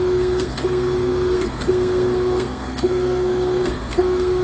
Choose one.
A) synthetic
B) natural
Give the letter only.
A